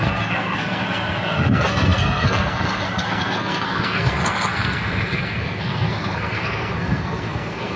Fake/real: fake